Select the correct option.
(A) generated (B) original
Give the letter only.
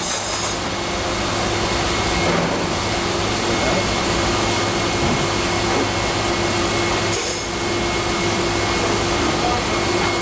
B